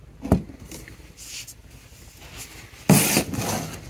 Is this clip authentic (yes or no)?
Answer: yes